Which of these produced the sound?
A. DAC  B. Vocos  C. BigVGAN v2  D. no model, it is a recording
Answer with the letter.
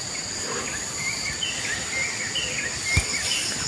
D